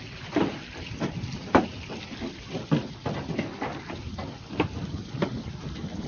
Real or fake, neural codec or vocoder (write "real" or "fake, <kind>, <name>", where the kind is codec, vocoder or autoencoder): real